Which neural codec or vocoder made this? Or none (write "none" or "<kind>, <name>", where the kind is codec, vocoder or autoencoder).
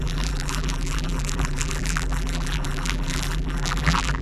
vocoder, BigVGAN v2